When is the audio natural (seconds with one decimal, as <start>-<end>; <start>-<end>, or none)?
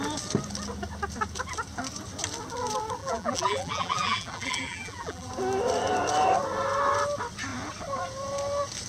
0.0-3.0; 5.3-8.9